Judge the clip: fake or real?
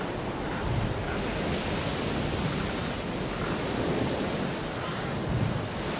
real